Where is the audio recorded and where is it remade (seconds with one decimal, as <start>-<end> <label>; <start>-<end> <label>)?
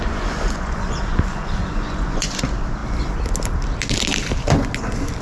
0.0-2.4 remade; 2.4-5.2 recorded